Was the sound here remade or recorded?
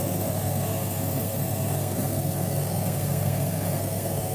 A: remade